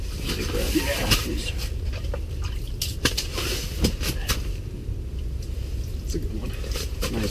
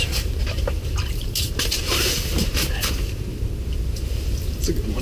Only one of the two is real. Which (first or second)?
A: first